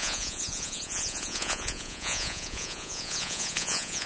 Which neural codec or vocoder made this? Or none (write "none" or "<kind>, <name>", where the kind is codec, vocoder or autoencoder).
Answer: vocoder, Vocos